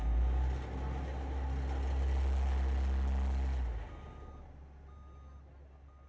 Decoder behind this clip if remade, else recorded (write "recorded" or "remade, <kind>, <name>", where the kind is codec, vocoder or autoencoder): recorded